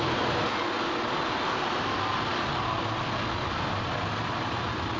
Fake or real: real